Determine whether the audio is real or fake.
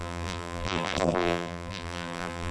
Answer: fake